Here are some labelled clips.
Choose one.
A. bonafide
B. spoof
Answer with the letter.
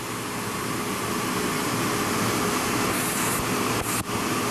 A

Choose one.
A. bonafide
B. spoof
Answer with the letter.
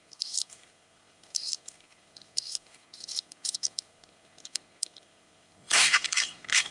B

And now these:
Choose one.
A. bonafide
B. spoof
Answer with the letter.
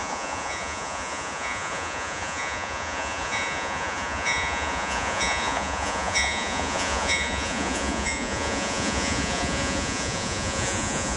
B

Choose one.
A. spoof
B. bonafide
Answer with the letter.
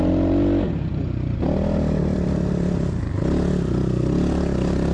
B